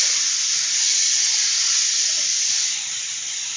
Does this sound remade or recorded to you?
recorded